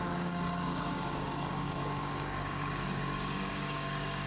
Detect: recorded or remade remade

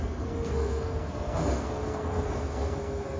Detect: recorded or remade remade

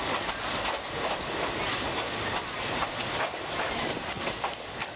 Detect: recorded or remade remade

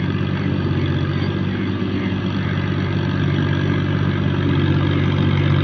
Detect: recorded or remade recorded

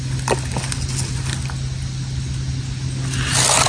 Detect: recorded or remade recorded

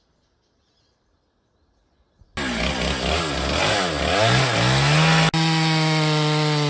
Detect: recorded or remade recorded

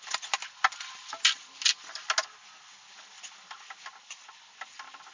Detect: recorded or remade recorded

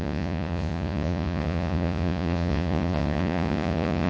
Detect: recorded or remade remade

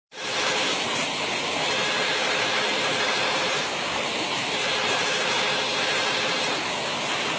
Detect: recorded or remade remade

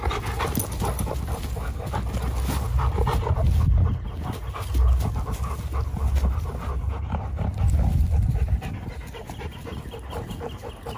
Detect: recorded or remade recorded